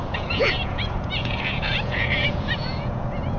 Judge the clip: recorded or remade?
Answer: remade